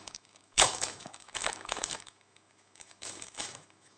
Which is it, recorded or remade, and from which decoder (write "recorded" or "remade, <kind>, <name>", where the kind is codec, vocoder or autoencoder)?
remade, autoencoder, DAC-VAE